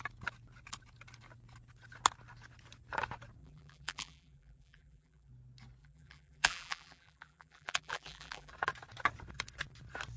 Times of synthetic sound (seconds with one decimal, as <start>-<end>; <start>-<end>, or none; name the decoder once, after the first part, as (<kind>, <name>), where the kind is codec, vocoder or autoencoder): 3.4-5.3 (vocoder, BigVGAN v2); 5.8-8.5